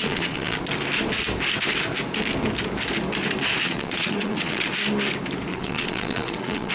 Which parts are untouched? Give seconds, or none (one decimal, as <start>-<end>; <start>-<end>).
0.6-3.6; 4.7-5.5